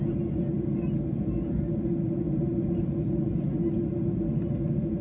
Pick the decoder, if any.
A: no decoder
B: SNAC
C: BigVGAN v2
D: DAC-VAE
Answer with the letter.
A